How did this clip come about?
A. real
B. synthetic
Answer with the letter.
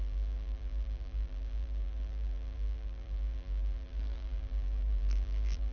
B